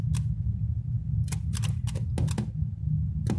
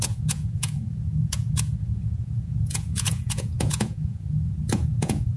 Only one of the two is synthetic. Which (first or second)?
second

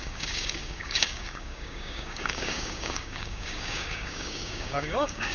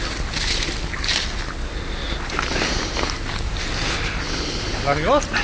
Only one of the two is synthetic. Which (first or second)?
first